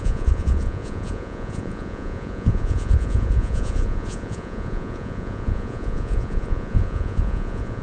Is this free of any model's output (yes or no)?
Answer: no